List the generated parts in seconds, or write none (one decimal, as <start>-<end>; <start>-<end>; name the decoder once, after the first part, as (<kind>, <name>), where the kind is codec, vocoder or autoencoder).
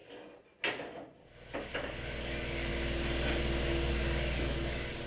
1.7-2.7 (codec, DAC); 3.9-5.1